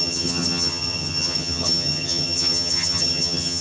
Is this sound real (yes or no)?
no